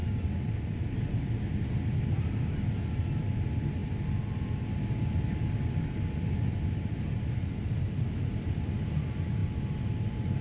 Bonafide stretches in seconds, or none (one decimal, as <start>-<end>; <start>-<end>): 0.0-10.4